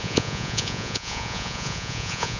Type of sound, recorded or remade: remade